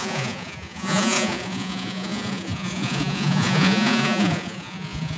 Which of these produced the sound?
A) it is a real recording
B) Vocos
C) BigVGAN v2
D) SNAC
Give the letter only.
B